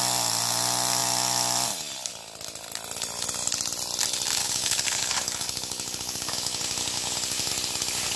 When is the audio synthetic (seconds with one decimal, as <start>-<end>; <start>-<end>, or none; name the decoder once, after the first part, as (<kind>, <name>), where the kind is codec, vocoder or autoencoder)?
4.4-7.5 (codec, DAC)